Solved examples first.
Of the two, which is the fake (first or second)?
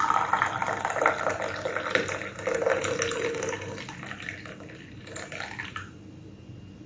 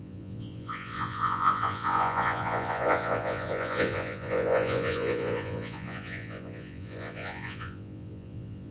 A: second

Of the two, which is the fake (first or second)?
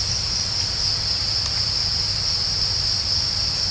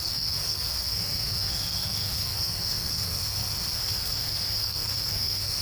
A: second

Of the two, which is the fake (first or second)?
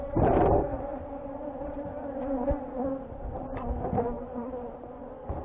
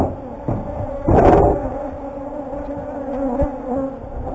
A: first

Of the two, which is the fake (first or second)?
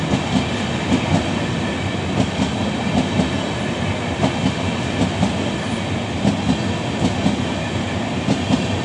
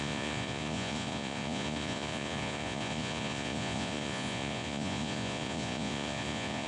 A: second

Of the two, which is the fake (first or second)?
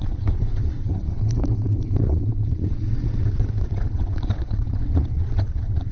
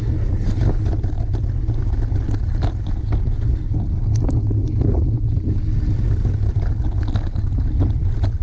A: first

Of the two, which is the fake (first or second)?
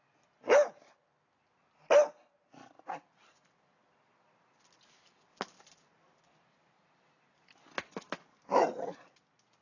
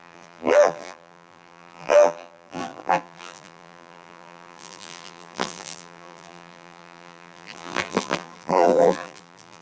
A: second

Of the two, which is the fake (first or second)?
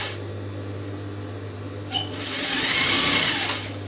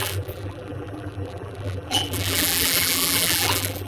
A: second